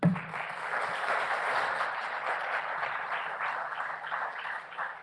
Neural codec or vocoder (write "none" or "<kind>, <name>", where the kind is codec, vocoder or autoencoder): vocoder, BigVGAN v2